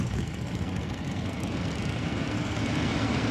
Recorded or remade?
remade